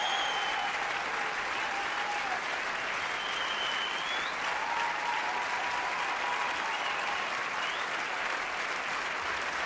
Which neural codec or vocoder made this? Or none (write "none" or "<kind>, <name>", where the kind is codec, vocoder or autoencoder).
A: none